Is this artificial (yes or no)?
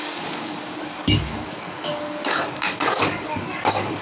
yes